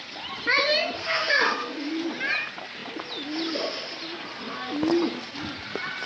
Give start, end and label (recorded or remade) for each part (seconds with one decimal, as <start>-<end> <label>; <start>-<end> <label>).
0.0-1.0 recorded; 1.0-1.9 remade; 1.9-6.1 recorded